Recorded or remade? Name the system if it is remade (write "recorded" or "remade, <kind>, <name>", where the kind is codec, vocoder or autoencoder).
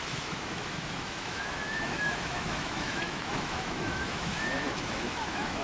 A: remade, autoencoder, DAC-VAE